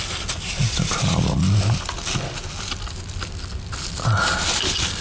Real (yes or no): yes